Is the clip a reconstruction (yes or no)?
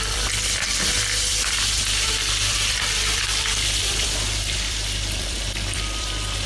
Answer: yes